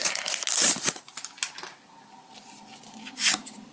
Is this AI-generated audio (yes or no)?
no